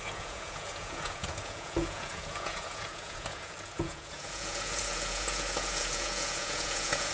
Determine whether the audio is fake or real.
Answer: fake